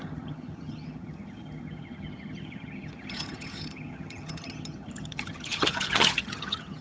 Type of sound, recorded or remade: remade